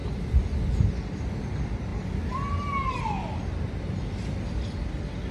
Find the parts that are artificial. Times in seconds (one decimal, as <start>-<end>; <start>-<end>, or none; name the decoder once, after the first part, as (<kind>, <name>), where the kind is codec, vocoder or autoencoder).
none